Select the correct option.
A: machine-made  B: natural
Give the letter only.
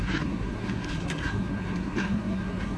A